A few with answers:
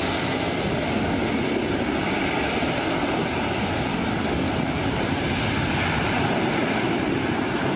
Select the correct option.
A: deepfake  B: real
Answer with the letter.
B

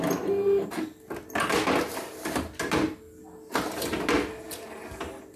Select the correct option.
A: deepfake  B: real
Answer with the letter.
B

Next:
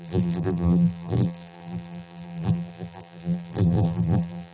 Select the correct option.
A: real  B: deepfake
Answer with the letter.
B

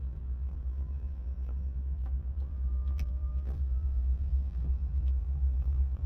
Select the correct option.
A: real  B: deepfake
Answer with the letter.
B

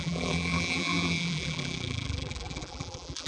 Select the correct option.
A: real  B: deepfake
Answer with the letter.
B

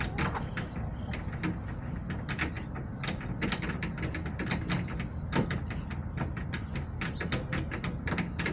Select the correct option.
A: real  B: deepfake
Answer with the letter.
A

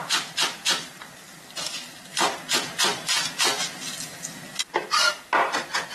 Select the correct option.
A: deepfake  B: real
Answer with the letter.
A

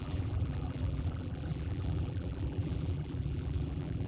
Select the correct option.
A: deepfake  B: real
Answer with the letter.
A